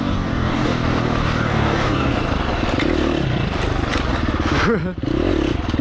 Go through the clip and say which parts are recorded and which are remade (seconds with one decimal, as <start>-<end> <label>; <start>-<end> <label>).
0.0-2.1 remade; 2.1-5.8 recorded